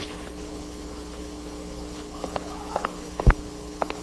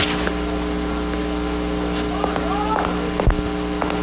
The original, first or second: second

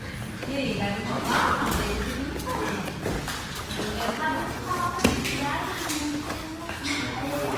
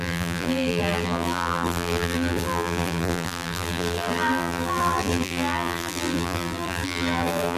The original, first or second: first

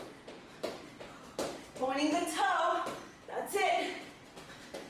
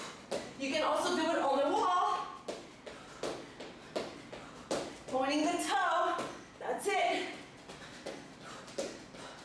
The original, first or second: second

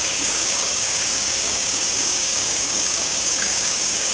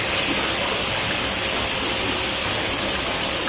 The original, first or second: second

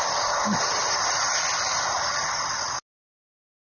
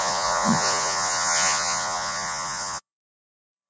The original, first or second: first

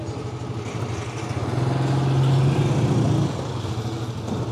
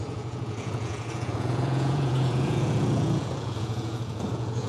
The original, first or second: first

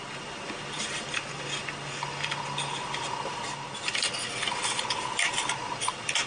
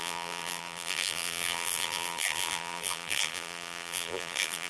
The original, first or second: first